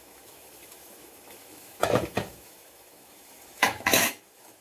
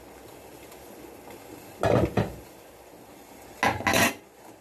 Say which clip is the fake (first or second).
first